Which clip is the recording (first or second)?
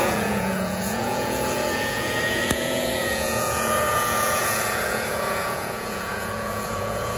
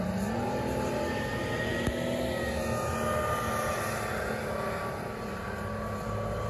second